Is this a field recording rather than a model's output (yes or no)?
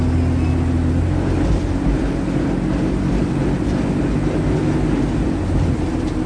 yes